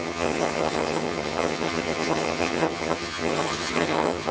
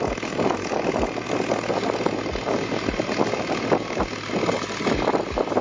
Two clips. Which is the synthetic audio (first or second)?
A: first